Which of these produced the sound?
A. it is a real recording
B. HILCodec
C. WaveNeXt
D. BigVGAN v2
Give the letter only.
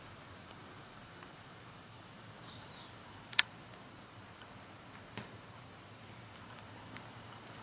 D